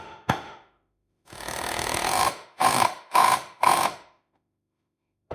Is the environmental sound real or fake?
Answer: fake